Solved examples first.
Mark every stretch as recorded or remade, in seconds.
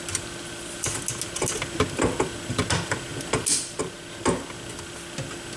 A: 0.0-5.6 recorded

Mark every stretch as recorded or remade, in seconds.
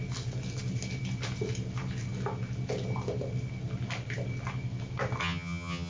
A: 0.0-5.2 recorded; 5.2-5.9 remade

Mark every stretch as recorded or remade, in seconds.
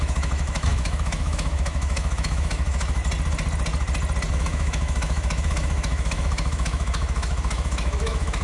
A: 0.0-3.0 remade; 3.0-4.3 recorded; 4.3-8.4 remade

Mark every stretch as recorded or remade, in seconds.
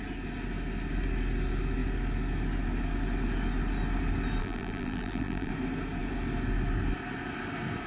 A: 0.0-4.4 recorded; 4.4-5.5 remade; 5.5-7.9 recorded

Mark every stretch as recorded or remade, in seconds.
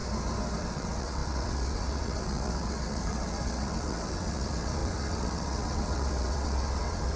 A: 0.0-0.6 recorded; 0.6-7.2 remade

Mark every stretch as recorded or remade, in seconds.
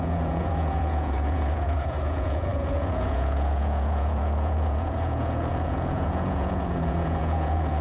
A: 0.0-7.8 remade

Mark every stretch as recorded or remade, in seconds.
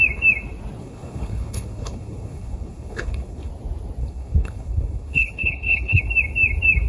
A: 0.0-0.8 recorded; 0.8-3.5 remade; 3.5-4.0 recorded; 4.0-6.0 remade; 6.0-6.9 recorded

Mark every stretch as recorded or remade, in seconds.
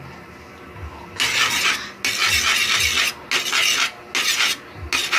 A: 0.0-5.2 recorded